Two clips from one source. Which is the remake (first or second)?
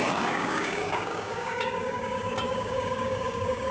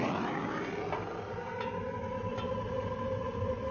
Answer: first